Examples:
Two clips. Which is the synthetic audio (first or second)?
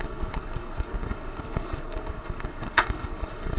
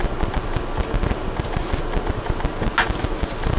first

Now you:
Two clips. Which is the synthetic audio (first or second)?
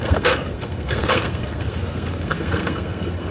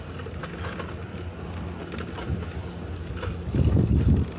first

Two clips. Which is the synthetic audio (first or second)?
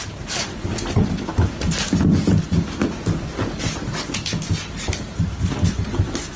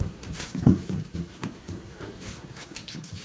second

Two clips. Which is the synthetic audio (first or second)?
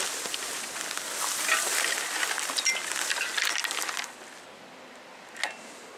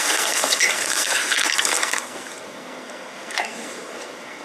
second